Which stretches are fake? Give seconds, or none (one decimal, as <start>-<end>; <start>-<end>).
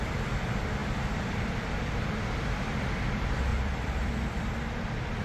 0.8-1.6; 3.5-4.1